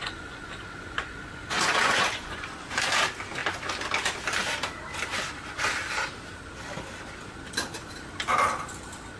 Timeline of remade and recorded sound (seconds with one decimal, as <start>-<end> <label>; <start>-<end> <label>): 0.0-2.7 remade; 2.7-9.2 recorded